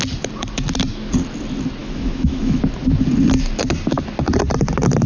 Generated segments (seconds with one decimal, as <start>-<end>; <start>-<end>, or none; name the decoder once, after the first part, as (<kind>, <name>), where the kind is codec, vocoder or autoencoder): 1.8-2.6 (autoencoder, DAC-VAE)